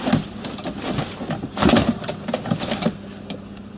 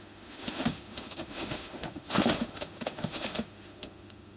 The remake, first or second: second